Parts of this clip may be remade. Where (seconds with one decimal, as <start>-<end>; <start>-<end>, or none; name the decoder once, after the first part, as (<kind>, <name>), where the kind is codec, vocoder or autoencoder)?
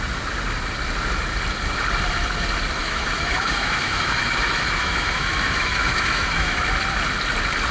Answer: 2.8-6.6 (autoencoder, DAC-VAE)